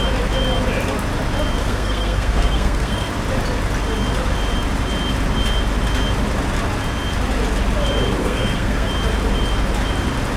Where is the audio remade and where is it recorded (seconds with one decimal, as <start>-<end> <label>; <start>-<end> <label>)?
0.0-1.6 recorded; 1.6-3.1 remade; 3.1-8.2 recorded; 8.2-8.9 remade; 8.9-10.4 recorded